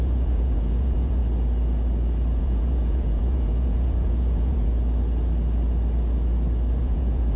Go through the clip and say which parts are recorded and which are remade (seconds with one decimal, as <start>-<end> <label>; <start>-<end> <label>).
0.0-1.2 remade; 1.2-2.4 recorded; 2.4-4.7 remade; 4.7-6.8 recorded; 6.8-7.4 remade